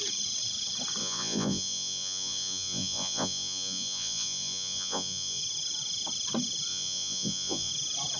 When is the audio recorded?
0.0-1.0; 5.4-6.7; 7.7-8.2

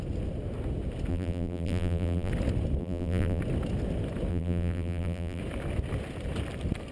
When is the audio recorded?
0.0-1.1; 2.3-2.8; 3.4-4.3; 5.4-6.9

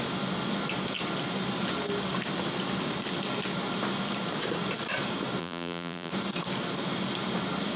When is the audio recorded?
0.0-5.4; 6.1-7.8

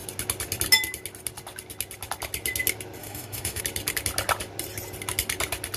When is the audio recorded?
0.0-3.0; 3.6-5.8

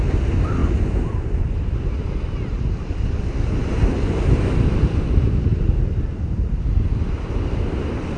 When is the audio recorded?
0.0-8.2

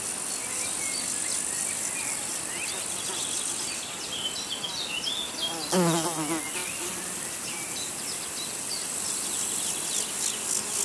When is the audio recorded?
0.0-6.6; 7.9-10.8

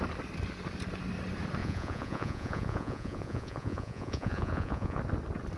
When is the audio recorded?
0.0-1.6; 5.0-5.6